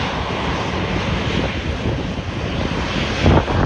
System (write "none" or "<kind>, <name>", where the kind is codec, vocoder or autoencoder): none